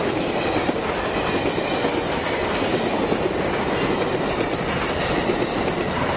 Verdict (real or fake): real